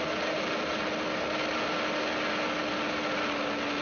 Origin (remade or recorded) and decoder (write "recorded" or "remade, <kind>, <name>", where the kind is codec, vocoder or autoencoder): recorded